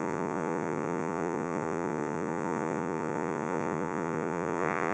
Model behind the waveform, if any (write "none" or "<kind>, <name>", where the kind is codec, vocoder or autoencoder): vocoder, Vocos